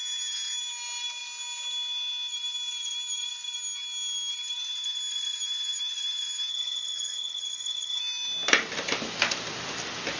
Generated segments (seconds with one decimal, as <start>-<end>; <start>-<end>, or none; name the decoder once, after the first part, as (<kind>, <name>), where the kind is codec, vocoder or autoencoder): 6.5-8.0 (vocoder, HiFi-GAN)